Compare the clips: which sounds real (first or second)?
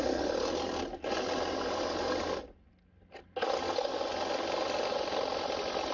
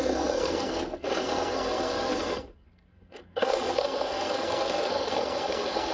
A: first